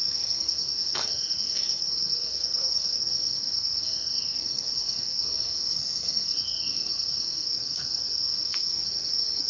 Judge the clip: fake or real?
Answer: fake